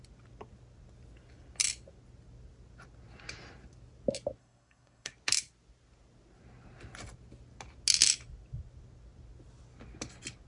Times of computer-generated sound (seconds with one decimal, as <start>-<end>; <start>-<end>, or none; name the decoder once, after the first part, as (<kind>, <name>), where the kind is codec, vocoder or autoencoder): 4.4-5.1 (codec, SNAC)